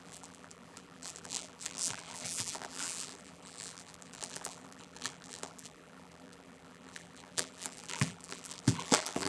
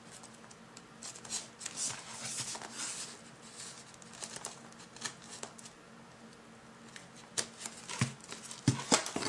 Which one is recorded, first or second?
second